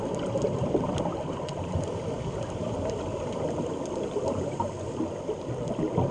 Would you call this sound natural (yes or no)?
no